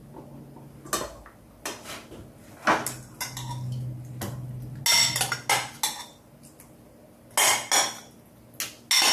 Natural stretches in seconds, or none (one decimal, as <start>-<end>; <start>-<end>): 0.0-9.1